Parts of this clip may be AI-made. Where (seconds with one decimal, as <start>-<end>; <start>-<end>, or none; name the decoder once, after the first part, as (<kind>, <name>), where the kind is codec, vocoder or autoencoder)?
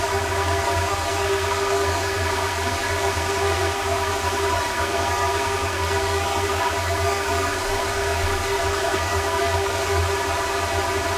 0.0-10.0 (codec, SNAC)